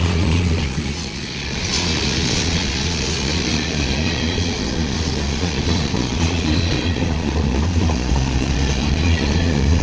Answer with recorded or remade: remade